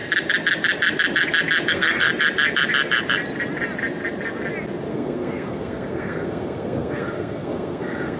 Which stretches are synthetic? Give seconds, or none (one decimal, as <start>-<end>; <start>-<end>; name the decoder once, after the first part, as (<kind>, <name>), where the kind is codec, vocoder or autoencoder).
1.7-2.1 (codec, SNAC); 4.9-8.2